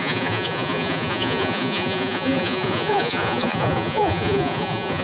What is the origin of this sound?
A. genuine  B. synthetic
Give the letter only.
B